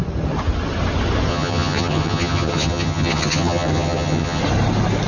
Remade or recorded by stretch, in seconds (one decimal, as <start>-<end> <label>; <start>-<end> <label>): 0.0-1.3 recorded; 1.3-4.4 remade; 4.4-5.1 recorded